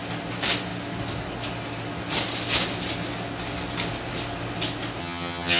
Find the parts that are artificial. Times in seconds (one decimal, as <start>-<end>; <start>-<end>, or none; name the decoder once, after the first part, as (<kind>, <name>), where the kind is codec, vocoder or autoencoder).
5.0-5.6 (vocoder, HiFi-GAN)